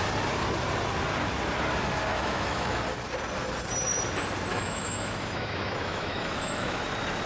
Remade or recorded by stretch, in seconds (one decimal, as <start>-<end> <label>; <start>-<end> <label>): 0.0-2.1 recorded; 2.1-2.8 remade; 2.8-4.5 recorded; 4.5-6.8 remade; 6.8-7.3 recorded